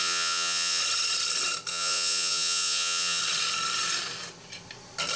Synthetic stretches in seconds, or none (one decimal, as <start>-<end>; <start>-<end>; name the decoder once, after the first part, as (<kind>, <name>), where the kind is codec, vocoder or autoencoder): 0.0-0.8 (vocoder, Vocos); 1.7-3.2